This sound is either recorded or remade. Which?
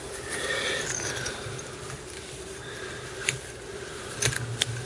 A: recorded